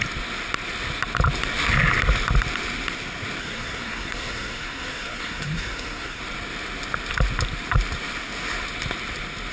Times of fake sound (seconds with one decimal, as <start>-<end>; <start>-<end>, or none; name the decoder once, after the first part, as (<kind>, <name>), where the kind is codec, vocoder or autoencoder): 3.4-6.2 (codec, SNAC)